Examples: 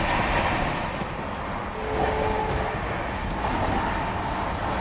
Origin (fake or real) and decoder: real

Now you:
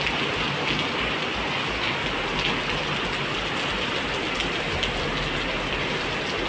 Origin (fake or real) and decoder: real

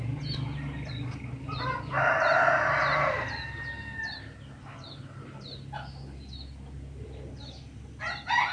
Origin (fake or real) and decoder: real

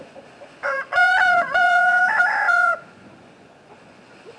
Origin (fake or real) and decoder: fake, vocoder, Vocos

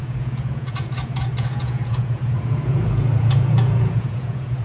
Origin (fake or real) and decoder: fake, vocoder, Vocos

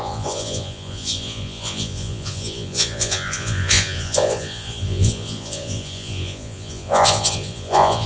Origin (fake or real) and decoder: fake, vocoder, Vocos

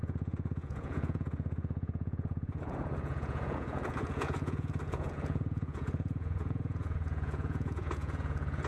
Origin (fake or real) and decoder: fake, vocoder, Vocos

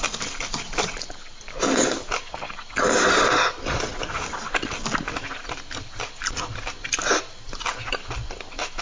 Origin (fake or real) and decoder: real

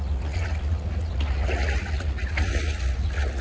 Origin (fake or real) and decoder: fake, vocoder, Vocos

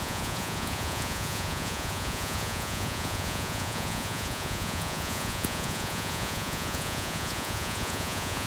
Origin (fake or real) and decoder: fake, vocoder, Vocos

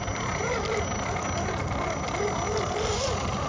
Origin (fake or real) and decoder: real